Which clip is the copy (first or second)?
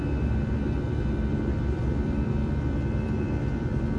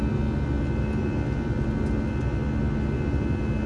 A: first